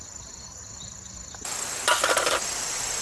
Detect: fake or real real